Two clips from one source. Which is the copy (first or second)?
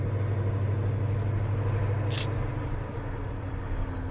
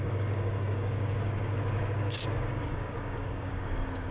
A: second